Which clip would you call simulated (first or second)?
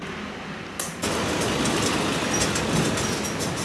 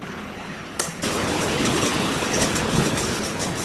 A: second